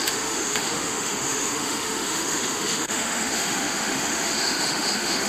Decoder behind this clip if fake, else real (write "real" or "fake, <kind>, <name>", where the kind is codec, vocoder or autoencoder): fake, autoencoder, DAC-VAE